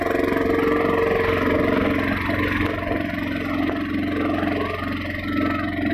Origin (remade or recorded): recorded